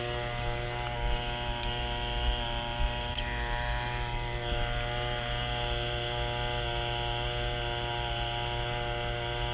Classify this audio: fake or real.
real